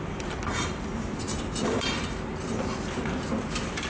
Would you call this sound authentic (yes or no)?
yes